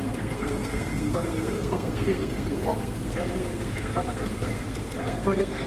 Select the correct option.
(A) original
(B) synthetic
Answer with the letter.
B